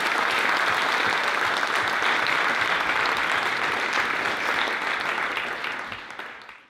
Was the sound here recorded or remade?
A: recorded